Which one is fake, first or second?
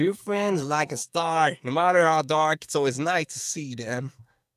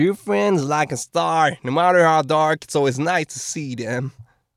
first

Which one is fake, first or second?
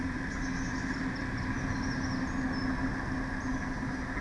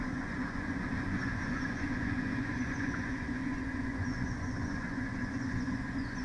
second